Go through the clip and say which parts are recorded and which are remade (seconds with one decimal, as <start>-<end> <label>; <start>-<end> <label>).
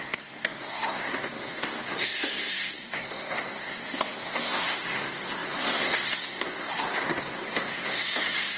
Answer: 0.0-8.6 remade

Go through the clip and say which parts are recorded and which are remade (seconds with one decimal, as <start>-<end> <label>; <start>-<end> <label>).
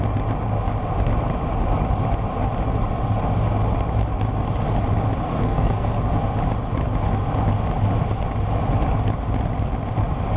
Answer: 0.0-5.3 recorded; 5.3-6.0 remade; 6.0-10.4 recorded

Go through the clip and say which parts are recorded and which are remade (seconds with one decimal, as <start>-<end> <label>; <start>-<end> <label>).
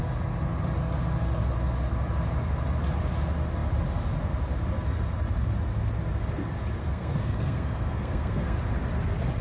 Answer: 0.0-6.8 recorded; 6.8-8.6 remade; 8.6-9.4 recorded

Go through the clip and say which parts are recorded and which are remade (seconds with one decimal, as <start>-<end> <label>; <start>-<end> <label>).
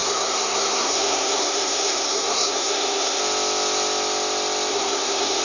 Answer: 0.0-3.2 remade; 3.2-4.7 recorded; 4.7-5.4 remade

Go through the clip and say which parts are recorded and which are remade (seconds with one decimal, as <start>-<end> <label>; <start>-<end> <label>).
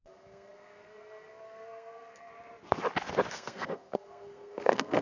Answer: 0.0-2.3 remade; 2.3-3.3 recorded; 3.3-5.0 remade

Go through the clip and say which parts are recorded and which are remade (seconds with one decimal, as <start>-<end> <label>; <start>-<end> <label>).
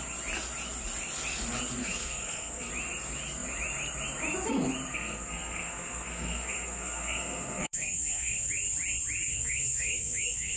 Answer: 0.0-1.8 recorded; 1.8-2.7 remade; 2.7-4.9 recorded; 4.9-8.5 remade; 8.5-9.3 recorded; 9.3-10.6 remade